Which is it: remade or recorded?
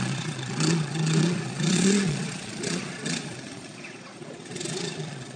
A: remade